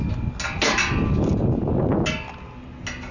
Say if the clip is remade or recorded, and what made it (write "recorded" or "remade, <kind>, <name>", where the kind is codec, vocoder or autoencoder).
recorded